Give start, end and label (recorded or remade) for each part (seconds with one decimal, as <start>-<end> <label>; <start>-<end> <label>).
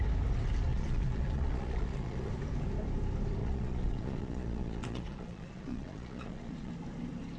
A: 0.0-0.7 recorded; 0.7-2.3 remade; 2.3-3.4 recorded; 3.4-6.7 remade; 6.7-7.4 recorded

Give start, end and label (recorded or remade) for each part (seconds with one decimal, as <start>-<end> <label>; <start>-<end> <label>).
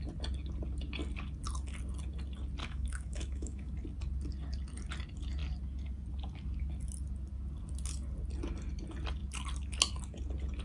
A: 0.0-2.6 recorded; 2.6-3.7 remade; 3.7-10.6 recorded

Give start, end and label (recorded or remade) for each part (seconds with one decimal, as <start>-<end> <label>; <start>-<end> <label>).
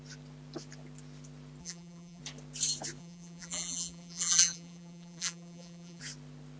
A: 0.0-1.6 recorded; 1.6-2.2 remade; 2.2-3.0 recorded; 3.0-6.0 remade; 6.0-6.6 recorded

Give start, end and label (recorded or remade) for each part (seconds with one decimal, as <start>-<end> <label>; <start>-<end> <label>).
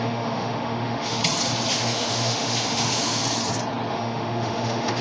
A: 0.0-1.2 remade; 1.2-1.7 recorded; 1.7-3.2 remade; 3.2-3.9 recorded; 3.9-5.0 remade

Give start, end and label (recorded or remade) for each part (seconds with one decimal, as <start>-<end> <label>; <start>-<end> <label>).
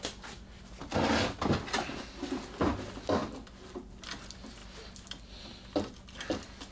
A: 0.0-6.7 recorded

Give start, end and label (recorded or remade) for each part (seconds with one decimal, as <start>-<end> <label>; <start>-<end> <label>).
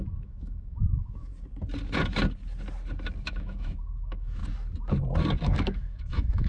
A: 0.0-1.3 remade; 1.3-3.2 recorded; 3.2-4.4 remade; 4.4-5.4 recorded; 5.4-6.5 remade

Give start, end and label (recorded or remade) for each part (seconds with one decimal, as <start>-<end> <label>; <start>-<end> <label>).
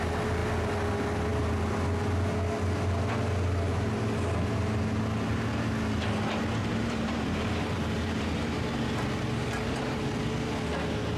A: 0.0-6.6 recorded; 6.6-10.0 remade; 10.0-11.2 recorded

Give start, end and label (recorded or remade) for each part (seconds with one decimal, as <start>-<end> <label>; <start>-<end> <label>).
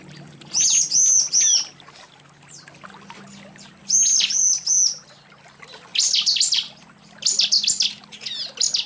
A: 0.0-8.9 recorded